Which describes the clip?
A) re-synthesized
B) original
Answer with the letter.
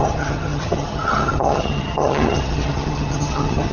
A